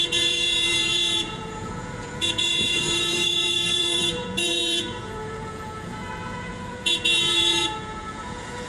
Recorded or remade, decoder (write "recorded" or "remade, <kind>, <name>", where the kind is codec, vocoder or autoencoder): remade, vocoder, Vocos